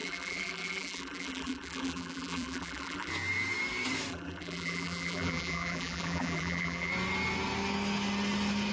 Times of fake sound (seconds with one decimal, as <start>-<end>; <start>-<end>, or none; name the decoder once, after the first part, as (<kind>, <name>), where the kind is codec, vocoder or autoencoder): 0.0-3.1 (vocoder, BigVGAN v2); 4.1-6.9

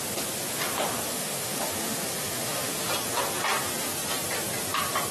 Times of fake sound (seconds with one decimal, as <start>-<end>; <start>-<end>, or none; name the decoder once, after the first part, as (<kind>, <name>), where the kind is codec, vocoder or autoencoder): 1.1-2.9 (autoencoder, DAC-VAE)

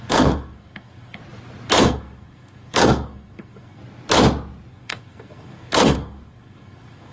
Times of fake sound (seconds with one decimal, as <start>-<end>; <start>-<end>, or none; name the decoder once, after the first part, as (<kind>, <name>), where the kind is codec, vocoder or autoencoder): 0.0-1.2 (codec, SNAC); 1.8-3.8; 4.7-7.1

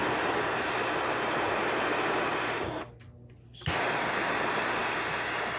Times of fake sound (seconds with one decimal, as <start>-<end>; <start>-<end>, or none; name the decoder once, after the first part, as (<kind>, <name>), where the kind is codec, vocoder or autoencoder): none

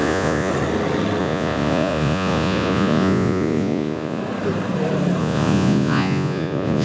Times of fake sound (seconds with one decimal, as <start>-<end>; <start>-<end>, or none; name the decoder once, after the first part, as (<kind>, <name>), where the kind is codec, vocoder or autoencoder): 0.0-0.5 (vocoder, Vocos); 1.2-4.2; 5.2-6.8